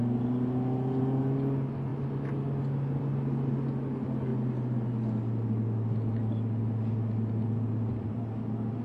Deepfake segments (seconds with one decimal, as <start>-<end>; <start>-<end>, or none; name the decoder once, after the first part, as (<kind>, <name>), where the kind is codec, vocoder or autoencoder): none